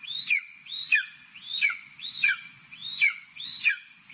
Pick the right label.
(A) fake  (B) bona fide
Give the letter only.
A